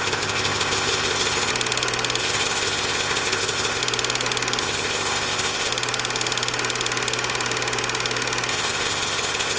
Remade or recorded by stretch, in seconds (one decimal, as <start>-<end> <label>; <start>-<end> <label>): 0.0-1.5 remade; 1.5-2.2 recorded; 2.2-3.8 remade; 3.8-4.6 recorded; 4.6-5.7 remade; 5.7-8.5 recorded; 8.5-9.6 remade